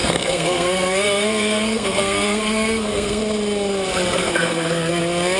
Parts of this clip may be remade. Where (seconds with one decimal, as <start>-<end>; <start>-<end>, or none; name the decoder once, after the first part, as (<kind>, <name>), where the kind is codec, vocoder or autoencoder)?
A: 0.0-3.2 (codec, SNAC); 4.2-5.0